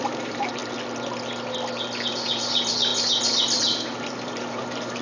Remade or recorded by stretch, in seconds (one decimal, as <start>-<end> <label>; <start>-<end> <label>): 0.0-0.6 remade; 0.6-2.1 recorded; 2.1-2.9 remade; 2.9-4.0 recorded; 4.0-5.0 remade